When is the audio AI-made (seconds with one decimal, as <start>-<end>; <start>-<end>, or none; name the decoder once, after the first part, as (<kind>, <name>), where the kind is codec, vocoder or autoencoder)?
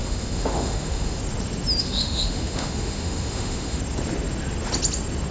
0.0-1.2 (autoencoder, DAC-VAE); 1.8-3.8